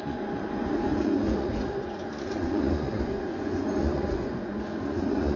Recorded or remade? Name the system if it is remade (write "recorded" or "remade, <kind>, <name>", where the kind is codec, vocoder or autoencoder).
remade, vocoder, Vocos